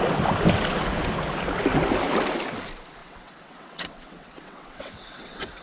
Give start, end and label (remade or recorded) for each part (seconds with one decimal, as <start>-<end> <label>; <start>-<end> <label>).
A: 0.0-3.0 recorded; 3.0-5.6 remade